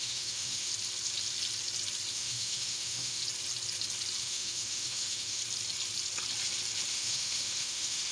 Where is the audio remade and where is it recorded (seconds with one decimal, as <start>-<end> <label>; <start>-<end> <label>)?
0.0-0.7 remade; 0.7-2.1 recorded; 2.1-3.2 remade; 3.2-4.2 recorded; 4.2-5.4 remade; 5.4-6.9 recorded; 6.9-8.1 remade